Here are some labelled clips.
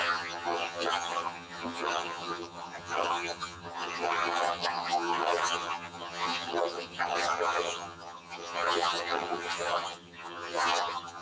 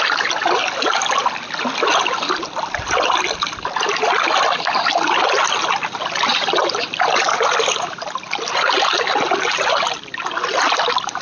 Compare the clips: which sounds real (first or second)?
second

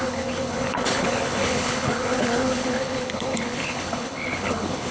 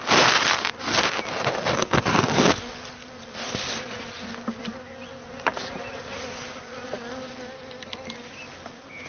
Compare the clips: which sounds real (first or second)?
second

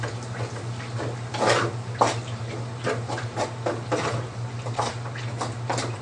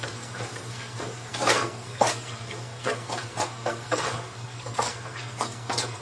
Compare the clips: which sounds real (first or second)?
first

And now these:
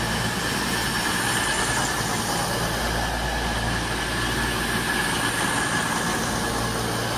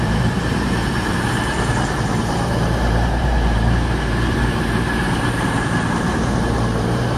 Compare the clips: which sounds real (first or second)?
first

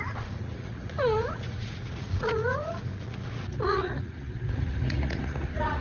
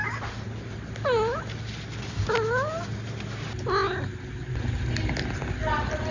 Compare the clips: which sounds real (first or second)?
second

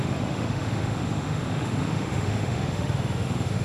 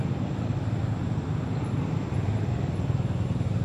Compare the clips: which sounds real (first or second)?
second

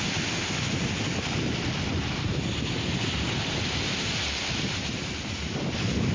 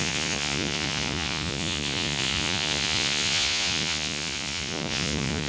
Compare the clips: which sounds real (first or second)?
first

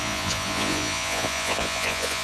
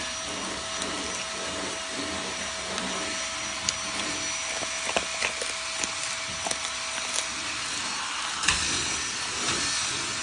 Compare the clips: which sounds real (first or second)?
second